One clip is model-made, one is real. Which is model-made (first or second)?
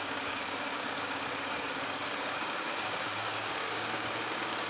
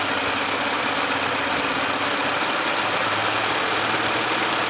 first